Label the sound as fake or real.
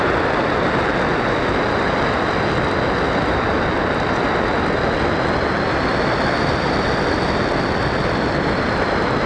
real